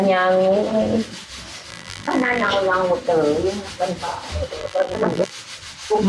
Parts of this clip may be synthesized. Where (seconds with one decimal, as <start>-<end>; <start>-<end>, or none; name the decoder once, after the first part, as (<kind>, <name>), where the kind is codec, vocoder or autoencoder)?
1.7-2.5 (vocoder, BigVGAN v2); 4.6-5.3